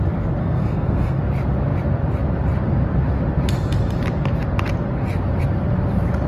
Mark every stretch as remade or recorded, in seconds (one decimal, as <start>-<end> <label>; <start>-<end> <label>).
0.0-0.4 recorded; 0.4-1.2 remade; 1.2-6.3 recorded

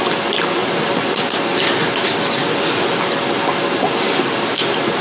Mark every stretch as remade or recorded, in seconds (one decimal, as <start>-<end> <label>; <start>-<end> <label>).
0.0-5.0 recorded